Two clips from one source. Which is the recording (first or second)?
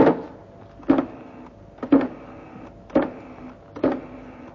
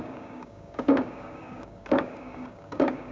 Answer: first